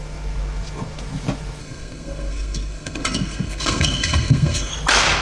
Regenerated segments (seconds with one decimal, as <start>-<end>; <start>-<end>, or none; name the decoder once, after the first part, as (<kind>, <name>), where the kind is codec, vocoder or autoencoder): 1.6-4.7 (codec, SNAC)